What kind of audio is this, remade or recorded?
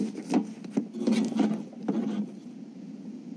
recorded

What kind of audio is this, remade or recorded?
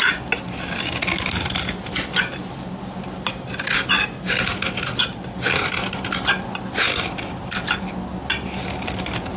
recorded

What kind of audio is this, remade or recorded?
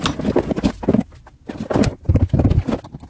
recorded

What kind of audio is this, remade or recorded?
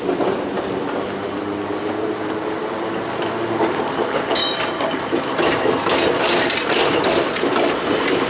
remade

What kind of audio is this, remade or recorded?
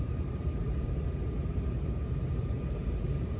remade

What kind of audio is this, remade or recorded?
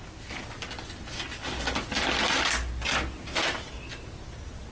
recorded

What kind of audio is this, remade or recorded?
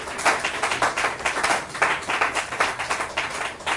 recorded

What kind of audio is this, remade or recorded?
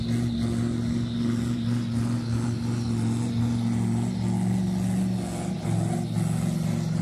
recorded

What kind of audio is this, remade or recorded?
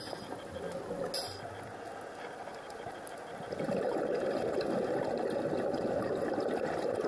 recorded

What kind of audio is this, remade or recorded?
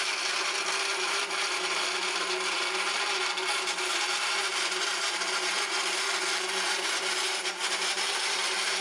remade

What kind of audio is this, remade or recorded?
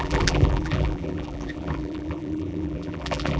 remade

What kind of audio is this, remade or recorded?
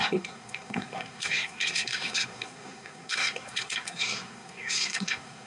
remade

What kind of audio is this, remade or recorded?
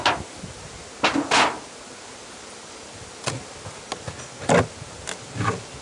recorded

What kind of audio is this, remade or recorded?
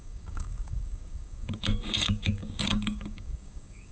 remade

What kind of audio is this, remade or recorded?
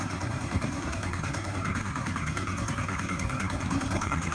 remade